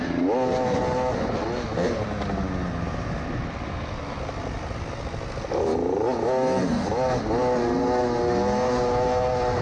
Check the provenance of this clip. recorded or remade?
recorded